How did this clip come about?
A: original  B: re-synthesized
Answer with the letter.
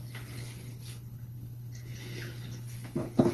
B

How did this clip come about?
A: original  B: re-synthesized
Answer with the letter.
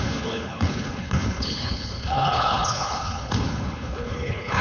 B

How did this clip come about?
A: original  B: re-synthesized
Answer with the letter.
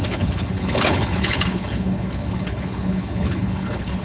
B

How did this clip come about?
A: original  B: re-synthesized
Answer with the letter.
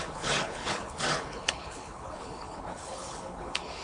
B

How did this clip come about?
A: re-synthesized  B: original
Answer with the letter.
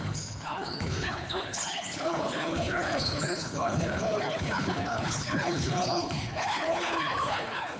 A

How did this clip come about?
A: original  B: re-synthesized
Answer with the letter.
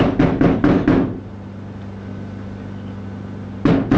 A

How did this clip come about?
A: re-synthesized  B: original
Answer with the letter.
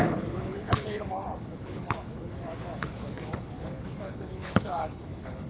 A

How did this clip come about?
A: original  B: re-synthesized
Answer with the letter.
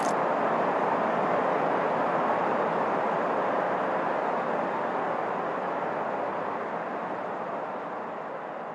A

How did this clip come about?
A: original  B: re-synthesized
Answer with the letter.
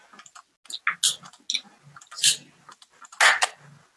A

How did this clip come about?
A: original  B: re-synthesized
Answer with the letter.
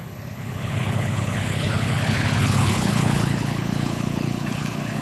B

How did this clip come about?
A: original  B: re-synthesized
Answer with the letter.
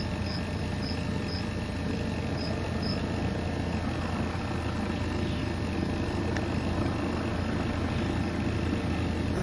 A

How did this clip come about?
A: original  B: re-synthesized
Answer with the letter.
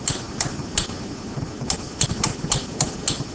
A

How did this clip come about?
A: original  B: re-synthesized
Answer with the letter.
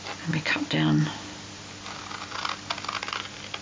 A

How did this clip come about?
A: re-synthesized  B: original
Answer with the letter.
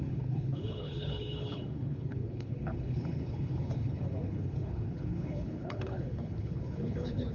A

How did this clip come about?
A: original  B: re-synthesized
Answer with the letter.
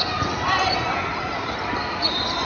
A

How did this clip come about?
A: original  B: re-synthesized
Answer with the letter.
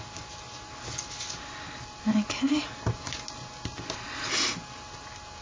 A